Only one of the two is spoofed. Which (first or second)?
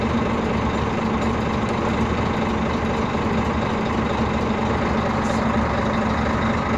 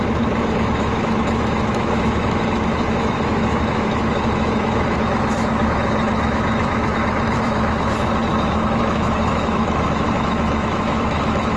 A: second